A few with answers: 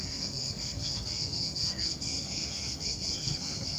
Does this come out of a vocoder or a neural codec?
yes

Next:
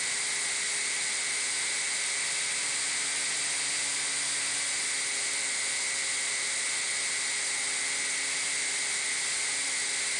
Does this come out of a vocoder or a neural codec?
no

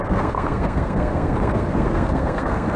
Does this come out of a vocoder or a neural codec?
yes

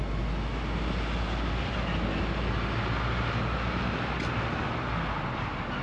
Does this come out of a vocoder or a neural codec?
no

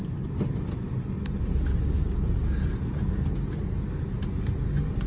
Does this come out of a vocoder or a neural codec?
no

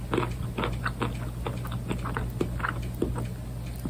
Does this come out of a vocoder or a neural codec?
no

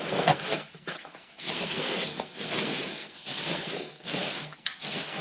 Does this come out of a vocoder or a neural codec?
yes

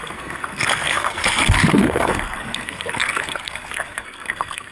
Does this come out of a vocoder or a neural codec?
yes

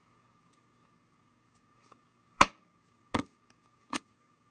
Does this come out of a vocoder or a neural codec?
yes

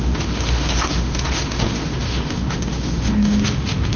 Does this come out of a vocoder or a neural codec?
yes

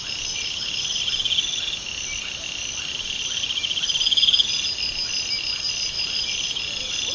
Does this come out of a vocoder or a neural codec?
no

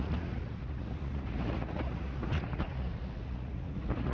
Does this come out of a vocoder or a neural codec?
yes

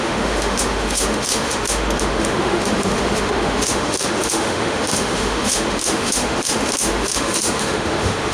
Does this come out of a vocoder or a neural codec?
yes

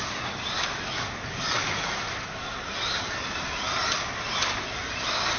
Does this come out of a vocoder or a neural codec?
no